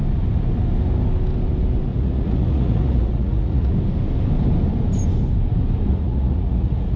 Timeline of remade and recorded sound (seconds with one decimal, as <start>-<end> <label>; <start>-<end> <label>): 0.0-1.9 recorded; 1.9-3.7 remade; 3.7-5.9 recorded; 5.9-7.0 remade